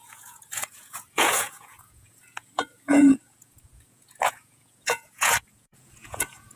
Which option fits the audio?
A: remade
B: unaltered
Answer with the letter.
A